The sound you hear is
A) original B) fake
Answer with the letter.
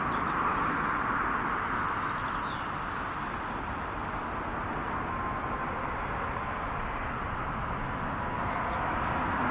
A